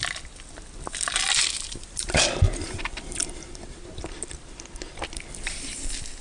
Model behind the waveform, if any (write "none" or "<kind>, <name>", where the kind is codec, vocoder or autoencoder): none